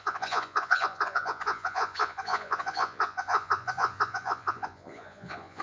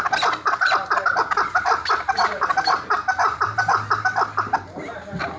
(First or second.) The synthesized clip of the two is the first